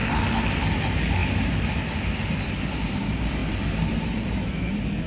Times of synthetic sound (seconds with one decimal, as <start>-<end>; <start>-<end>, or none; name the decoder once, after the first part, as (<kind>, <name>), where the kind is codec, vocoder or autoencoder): 0.0-0.6 (vocoder, BigVGAN v2); 3.4-4.3